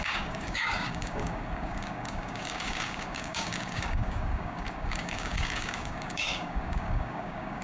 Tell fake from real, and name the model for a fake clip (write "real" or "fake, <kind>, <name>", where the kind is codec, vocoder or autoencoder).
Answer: fake, codec, DAC